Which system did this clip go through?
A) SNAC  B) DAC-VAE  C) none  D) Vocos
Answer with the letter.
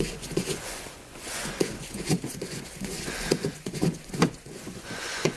D